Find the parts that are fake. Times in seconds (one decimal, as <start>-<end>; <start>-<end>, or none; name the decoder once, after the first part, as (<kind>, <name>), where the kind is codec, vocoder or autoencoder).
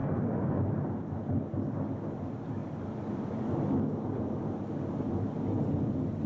0.0-0.6 (codec, SNAC)